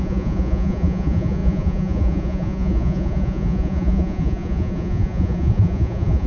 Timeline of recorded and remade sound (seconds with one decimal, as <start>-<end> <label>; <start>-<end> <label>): 0.0-6.3 remade